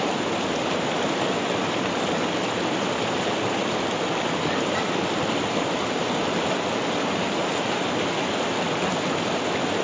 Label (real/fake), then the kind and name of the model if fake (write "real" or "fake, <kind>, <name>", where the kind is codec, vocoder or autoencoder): real